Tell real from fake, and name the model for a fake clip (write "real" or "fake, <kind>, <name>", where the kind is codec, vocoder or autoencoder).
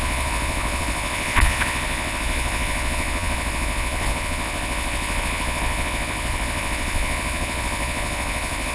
fake, vocoder, Vocos